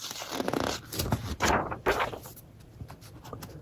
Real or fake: real